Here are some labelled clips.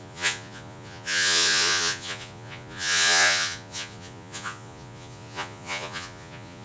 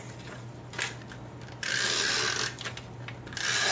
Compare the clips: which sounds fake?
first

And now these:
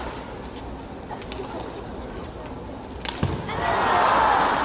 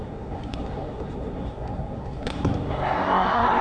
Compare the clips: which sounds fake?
second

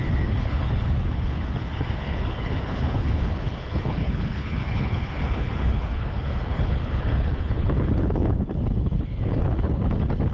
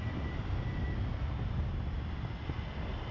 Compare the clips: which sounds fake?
first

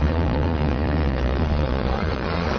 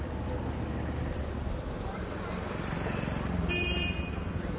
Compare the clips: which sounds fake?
first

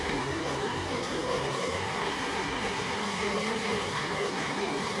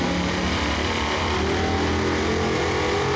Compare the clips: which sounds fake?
first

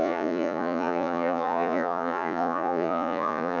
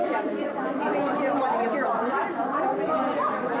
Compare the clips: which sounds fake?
first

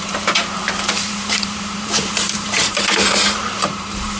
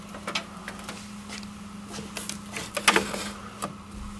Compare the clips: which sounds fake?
first